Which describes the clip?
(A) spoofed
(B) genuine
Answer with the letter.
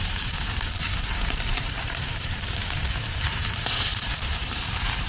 A